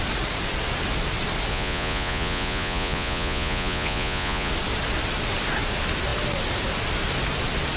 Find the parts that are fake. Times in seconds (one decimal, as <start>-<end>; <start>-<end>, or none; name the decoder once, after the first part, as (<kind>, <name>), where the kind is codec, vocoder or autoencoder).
1.5-4.5 (vocoder, Vocos)